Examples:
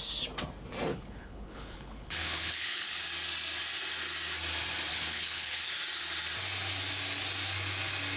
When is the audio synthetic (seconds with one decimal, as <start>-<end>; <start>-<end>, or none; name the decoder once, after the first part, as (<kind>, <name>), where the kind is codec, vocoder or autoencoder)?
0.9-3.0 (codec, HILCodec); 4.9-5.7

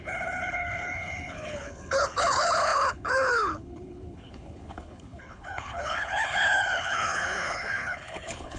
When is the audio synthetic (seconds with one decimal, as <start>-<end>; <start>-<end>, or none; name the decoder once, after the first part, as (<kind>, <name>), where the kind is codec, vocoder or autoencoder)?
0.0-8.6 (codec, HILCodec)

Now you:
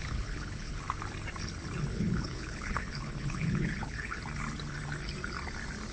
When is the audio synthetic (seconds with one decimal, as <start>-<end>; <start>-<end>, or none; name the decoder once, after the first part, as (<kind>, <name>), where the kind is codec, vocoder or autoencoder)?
0.0-0.8 (codec, HILCodec); 1.9-4.2

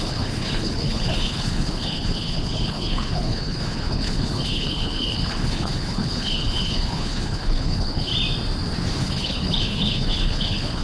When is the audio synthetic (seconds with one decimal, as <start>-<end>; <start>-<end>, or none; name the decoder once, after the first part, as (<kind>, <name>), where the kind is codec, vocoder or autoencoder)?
0.0-8.1 (codec, HILCodec); 8.9-10.8

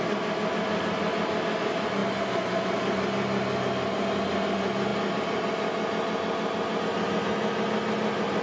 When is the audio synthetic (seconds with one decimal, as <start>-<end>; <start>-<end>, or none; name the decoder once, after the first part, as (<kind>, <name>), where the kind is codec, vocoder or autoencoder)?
none

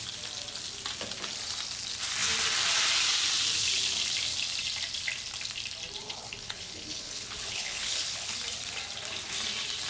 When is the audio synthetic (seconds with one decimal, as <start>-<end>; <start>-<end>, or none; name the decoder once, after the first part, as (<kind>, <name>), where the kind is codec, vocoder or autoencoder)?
6.0-8.4 (codec, HILCodec)

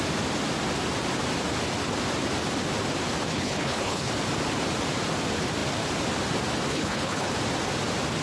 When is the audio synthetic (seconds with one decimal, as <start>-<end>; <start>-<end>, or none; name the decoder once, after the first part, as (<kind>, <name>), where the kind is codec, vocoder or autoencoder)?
3.3-4.1 (codec, HILCodec); 6.7-7.3

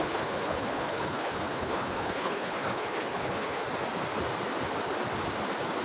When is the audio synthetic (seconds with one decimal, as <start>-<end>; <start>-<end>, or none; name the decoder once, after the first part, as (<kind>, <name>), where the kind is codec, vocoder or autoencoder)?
0.0-3.6 (codec, HILCodec)